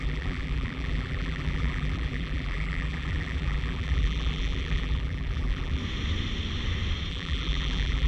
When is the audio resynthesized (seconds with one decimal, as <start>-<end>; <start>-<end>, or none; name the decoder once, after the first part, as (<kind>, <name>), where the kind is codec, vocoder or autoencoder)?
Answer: 0.0-5.8 (vocoder, BigVGAN v2); 7.1-8.1